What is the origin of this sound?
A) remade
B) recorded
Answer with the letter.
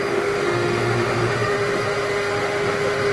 A